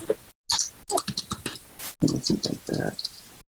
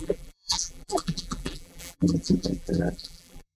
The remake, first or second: second